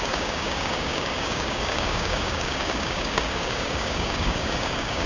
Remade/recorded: remade